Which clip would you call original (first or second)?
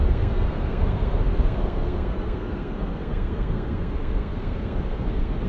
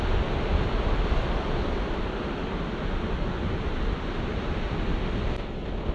second